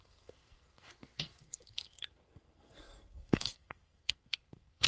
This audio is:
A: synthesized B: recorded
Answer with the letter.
A